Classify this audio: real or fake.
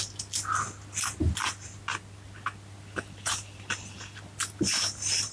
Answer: real